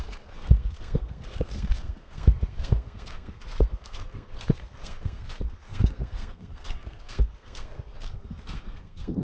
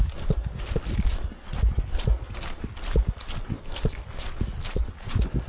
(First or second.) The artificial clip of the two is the first